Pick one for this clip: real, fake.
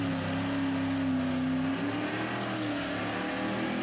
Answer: real